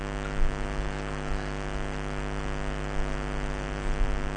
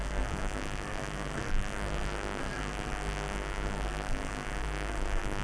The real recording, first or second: first